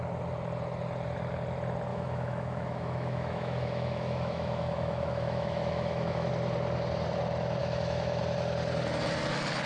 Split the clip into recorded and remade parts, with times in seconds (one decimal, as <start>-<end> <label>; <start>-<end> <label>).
0.0-1.9 recorded; 1.9-6.3 remade; 6.3-7.6 recorded; 7.6-8.2 remade; 8.2-9.7 recorded